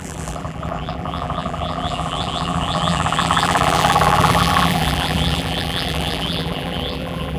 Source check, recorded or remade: remade